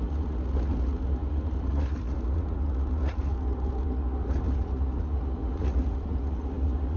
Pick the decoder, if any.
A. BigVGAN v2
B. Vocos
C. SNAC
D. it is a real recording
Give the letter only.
B